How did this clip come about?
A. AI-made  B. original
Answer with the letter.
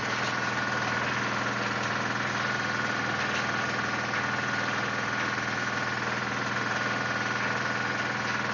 B